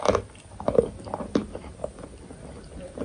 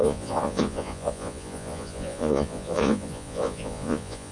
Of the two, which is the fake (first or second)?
second